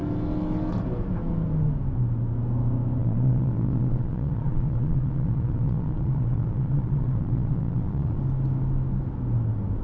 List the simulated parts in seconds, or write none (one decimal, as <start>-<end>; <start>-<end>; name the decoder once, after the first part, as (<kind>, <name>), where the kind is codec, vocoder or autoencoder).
3.0-8.2 (vocoder, Vocos)